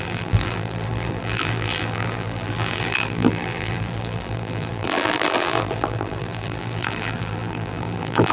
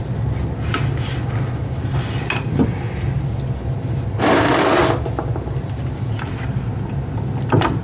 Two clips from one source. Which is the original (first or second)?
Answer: second